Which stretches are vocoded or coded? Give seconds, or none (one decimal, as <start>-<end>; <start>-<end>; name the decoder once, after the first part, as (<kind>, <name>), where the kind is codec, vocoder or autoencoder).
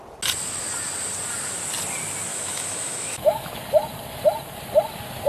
2.3-3.5 (autoencoder, DAC-VAE)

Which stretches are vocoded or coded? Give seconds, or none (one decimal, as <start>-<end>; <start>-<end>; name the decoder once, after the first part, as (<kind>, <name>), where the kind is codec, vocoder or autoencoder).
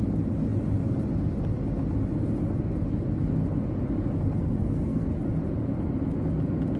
4.4-5.1 (codec, SNAC)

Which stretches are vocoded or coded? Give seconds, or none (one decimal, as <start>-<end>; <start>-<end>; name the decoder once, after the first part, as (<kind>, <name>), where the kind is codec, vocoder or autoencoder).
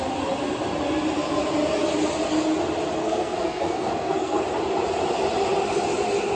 3.0-4.4 (codec, SNAC)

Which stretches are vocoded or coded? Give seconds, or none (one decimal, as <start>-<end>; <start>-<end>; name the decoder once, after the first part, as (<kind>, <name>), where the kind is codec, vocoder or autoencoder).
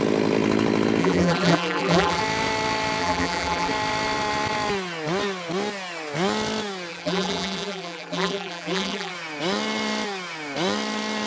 1.0-2.2 (vocoder, BigVGAN v2); 3.0-3.7; 6.9-9.1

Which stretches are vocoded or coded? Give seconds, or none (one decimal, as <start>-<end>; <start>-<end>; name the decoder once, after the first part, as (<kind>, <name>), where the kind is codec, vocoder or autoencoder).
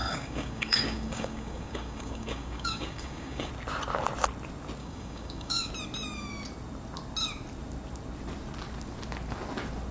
0.0-3.5 (codec, DAC); 4.8-5.7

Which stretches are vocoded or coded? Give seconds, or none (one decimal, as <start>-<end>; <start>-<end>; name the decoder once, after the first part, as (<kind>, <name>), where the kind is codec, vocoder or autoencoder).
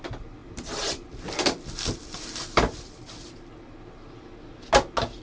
0.4-3.5 (vocoder, BigVGAN v2)